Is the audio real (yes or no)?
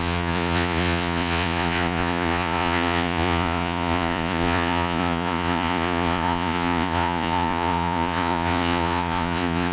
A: no